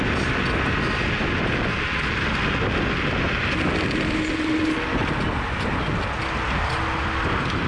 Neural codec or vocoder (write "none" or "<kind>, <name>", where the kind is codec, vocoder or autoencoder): none